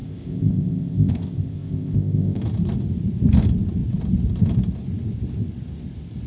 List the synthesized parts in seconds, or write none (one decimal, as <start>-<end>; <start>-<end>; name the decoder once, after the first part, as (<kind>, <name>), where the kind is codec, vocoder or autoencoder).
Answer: 0.0-2.4 (codec, ZipCodec)